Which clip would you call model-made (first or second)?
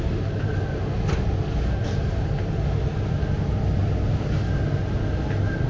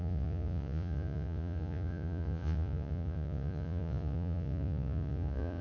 second